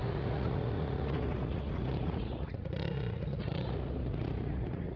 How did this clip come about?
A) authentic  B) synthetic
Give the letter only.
B